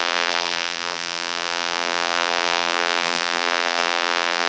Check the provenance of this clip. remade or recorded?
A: remade